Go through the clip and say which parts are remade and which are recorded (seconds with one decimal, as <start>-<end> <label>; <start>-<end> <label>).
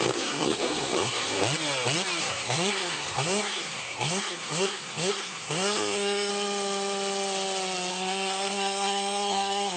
0.0-1.4 remade; 1.4-2.2 recorded; 2.2-6.3 remade; 6.3-7.9 recorded; 7.9-9.8 remade